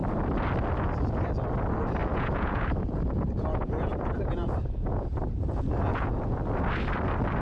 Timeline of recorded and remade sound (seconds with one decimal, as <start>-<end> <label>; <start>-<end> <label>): 0.0-2.0 recorded; 2.0-6.4 remade; 6.4-7.4 recorded